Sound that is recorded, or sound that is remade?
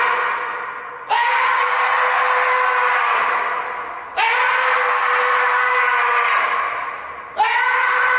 recorded